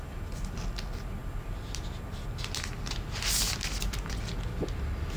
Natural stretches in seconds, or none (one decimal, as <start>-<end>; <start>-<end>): 0.0-5.2